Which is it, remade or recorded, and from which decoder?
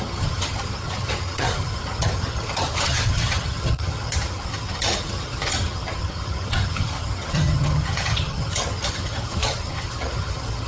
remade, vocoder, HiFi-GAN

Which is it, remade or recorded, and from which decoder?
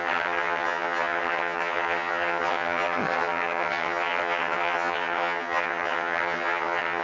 remade, vocoder, HiFi-GAN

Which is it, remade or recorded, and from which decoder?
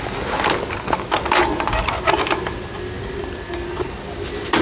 recorded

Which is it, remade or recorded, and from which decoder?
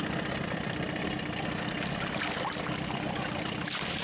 recorded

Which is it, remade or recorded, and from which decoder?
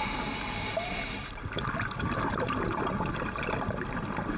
recorded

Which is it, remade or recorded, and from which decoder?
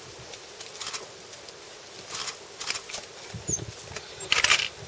recorded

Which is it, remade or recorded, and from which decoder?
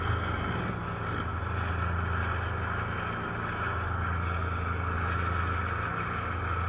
recorded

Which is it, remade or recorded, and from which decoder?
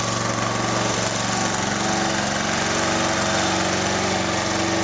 recorded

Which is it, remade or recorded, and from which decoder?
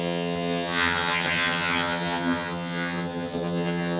remade, vocoder, HiFi-GAN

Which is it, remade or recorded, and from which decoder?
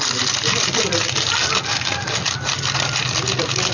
recorded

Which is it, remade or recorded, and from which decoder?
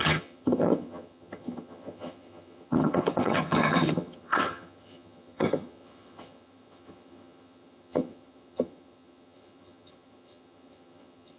remade, vocoder, HiFi-GAN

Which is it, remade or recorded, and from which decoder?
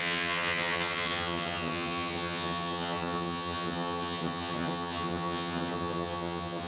remade, vocoder, HiFi-GAN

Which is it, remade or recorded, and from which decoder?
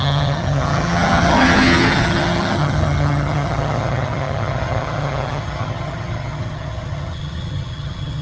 remade, vocoder, HiFi-GAN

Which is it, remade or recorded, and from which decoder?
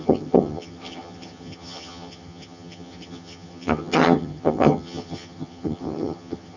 remade, vocoder, HiFi-GAN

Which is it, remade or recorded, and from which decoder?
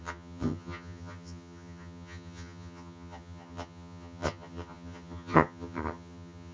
remade, vocoder, HiFi-GAN